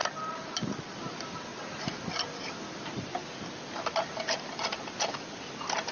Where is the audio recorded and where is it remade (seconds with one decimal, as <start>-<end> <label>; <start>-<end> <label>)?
0.0-5.9 recorded